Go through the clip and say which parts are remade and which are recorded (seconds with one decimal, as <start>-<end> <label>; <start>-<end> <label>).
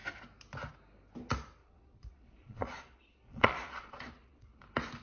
0.0-1.6 recorded; 1.6-4.6 remade; 4.6-5.0 recorded